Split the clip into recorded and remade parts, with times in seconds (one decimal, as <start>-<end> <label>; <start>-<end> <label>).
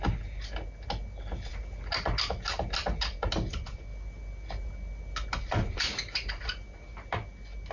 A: 0.0-7.7 recorded